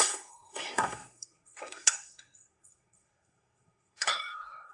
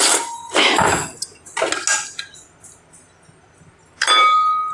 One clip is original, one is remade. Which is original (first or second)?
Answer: second